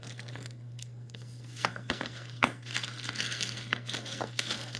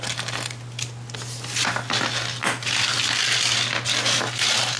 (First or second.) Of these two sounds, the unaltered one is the second